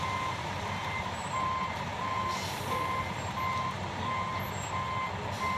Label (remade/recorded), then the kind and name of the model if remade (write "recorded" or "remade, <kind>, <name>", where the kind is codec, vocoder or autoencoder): recorded